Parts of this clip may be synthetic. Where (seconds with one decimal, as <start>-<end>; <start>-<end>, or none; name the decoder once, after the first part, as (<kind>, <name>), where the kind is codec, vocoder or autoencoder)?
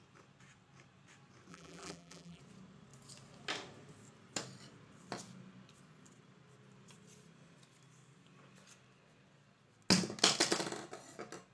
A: 1.5-2.4 (vocoder, BigVGAN v2)